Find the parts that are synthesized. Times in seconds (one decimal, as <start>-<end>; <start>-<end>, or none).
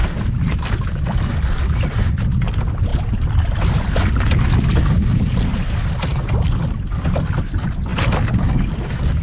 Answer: 0.0-1.3; 2.9-4.1; 6.1-7.3